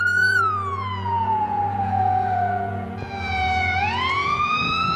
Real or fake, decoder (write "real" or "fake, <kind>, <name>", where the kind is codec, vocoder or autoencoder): fake, vocoder, Vocos